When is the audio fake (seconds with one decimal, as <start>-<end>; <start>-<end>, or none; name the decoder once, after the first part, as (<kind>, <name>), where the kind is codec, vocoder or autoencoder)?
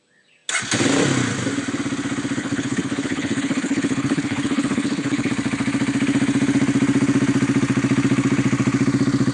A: 2.4-5.3 (codec, HILCodec)